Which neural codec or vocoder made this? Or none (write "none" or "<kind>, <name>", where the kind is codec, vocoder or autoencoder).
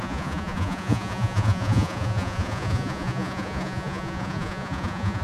vocoder, Vocos